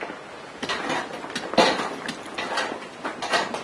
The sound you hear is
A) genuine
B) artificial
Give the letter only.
A